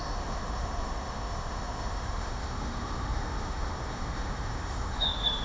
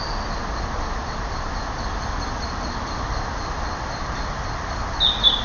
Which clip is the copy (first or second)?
first